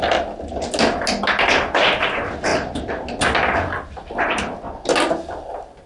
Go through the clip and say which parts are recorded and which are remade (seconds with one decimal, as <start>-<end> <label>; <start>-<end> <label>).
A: 0.0-5.9 recorded